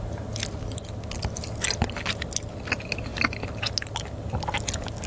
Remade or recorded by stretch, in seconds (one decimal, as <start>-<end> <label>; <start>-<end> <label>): 0.0-5.1 recorded